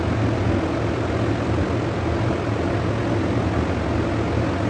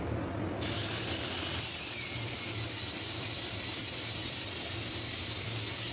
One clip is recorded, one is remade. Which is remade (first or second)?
second